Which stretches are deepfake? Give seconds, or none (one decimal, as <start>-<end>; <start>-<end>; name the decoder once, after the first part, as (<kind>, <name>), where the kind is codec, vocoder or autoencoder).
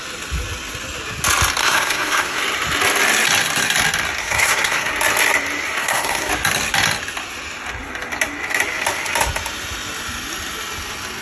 1.6-2.4 (codec, SNAC); 4.2-4.9; 5.8-6.3